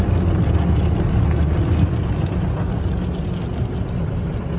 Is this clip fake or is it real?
real